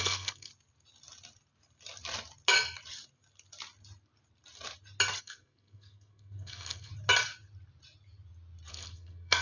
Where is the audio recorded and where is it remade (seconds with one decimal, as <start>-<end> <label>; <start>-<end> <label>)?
0.0-0.5 remade; 0.5-5.2 recorded; 5.2-6.9 remade; 6.9-8.7 recorded; 8.7-9.4 remade